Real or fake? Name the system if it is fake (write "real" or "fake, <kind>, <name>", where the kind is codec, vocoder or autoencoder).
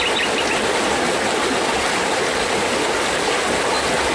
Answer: real